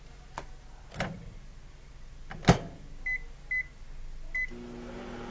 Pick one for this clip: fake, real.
real